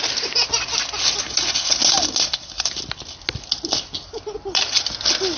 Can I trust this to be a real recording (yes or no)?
yes